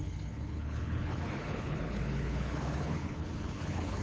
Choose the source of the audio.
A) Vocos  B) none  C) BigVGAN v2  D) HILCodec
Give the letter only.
D